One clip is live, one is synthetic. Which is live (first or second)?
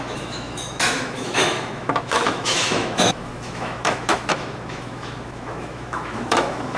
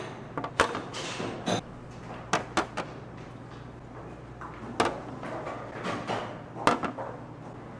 second